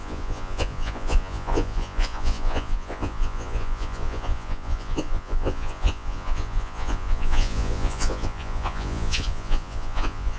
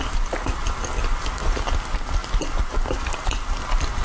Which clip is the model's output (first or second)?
first